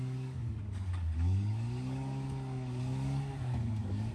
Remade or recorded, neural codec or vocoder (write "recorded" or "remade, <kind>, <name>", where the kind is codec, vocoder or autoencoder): remade, codec, DAC